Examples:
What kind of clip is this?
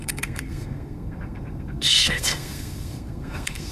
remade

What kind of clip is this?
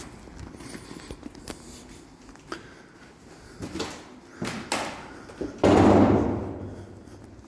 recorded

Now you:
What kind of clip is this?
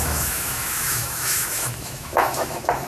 remade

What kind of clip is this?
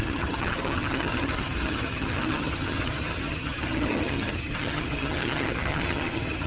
remade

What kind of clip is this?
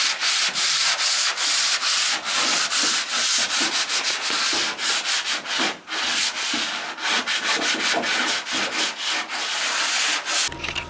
recorded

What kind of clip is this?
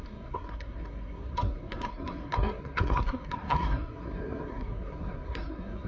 remade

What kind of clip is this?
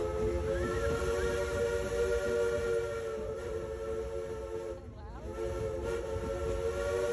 recorded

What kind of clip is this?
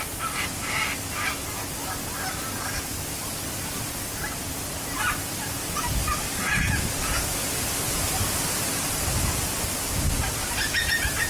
recorded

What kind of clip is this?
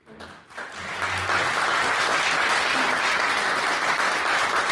recorded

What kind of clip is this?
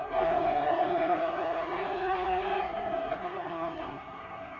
remade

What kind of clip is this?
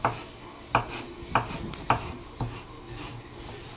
recorded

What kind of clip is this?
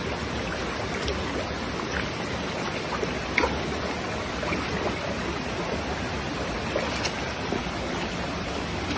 recorded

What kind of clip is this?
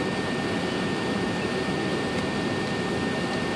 recorded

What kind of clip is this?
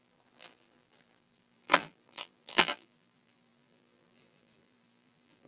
remade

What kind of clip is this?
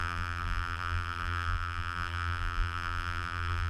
remade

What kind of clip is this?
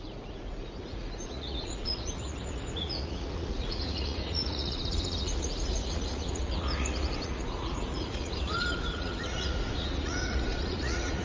remade